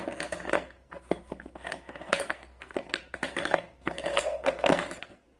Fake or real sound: fake